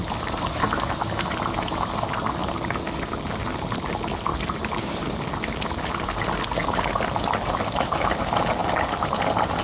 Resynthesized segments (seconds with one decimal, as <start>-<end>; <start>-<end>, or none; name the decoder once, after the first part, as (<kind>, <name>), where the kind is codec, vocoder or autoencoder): none